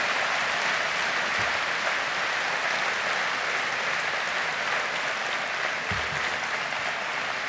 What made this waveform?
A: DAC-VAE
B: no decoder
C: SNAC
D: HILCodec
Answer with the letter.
B